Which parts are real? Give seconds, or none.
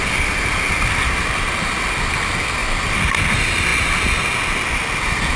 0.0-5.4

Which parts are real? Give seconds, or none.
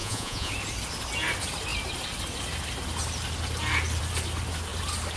0.5-5.2